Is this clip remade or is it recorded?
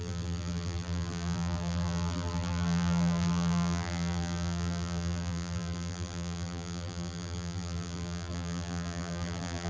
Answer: remade